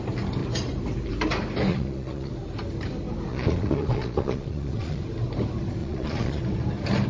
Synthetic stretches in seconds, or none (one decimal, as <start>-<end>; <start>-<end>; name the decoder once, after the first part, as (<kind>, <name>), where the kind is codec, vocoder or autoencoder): 1.7-2.3 (vocoder, Vocos); 3.3-5.0; 5.8-6.4